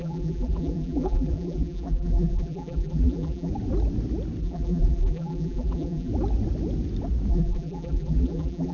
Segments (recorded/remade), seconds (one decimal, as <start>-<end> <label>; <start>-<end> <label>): 0.0-3.5 remade; 3.5-4.4 recorded; 4.4-6.1 remade; 6.1-7.3 recorded; 7.3-8.7 remade